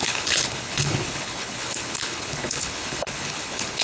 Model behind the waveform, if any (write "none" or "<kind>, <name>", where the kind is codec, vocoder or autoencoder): codec, HILCodec